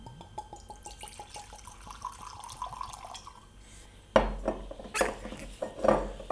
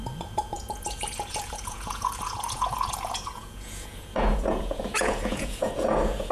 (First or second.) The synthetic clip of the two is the second